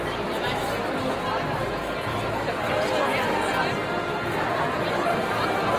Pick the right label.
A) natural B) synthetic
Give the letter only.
A